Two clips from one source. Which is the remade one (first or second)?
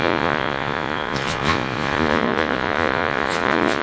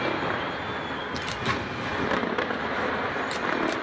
first